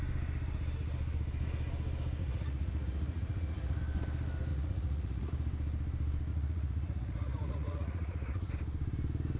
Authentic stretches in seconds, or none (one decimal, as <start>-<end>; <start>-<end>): 0.0-2.2; 3.8-4.5; 5.3-6.3; 8.5-9.4